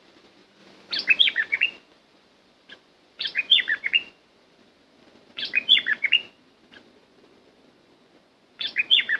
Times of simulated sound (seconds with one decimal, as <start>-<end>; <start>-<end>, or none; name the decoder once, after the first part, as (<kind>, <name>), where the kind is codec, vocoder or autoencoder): 0.0-0.6 (vocoder, Vocos); 1.2-9.2